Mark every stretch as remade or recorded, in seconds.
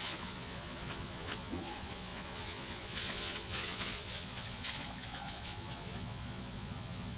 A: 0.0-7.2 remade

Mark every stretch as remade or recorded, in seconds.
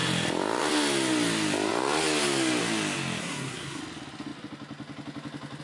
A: 0.0-3.2 recorded; 3.2-3.8 remade; 3.8-5.6 recorded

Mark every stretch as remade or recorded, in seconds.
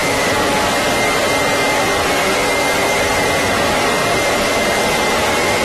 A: 0.0-4.0 recorded; 4.0-5.0 remade; 5.0-5.6 recorded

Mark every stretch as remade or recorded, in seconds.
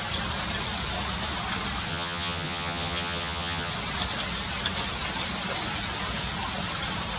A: 0.0-1.9 recorded; 1.9-3.7 remade; 3.7-7.2 recorded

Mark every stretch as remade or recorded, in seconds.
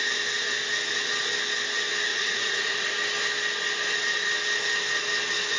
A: 0.0-2.1 recorded; 2.1-2.9 remade; 2.9-5.6 recorded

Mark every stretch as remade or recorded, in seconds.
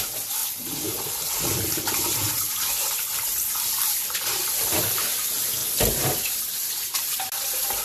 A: 0.0-0.4 recorded; 0.4-4.8 remade; 4.8-5.6 recorded; 5.6-7.0 remade; 7.0-7.8 recorded